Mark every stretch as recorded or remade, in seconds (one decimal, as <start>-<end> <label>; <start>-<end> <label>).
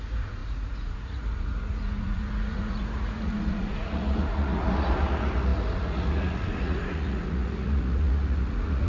0.0-8.9 remade